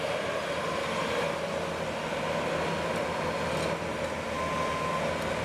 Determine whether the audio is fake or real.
real